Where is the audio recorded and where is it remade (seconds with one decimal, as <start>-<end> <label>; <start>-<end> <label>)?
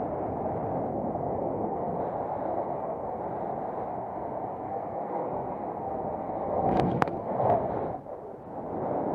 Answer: 0.0-0.9 recorded; 0.9-2.0 remade; 2.0-2.5 recorded; 2.5-3.2 remade; 3.2-3.9 recorded; 3.9-7.7 remade; 7.7-9.1 recorded